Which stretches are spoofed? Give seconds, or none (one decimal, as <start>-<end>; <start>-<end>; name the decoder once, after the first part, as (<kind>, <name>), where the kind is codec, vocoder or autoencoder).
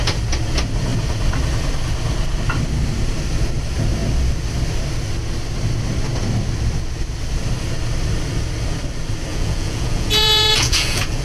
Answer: 9.3-11.2 (vocoder, Vocos)